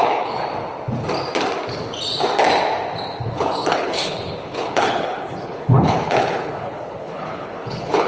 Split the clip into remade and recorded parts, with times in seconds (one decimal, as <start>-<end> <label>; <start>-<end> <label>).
0.0-0.4 remade; 0.4-3.2 recorded; 3.2-8.1 remade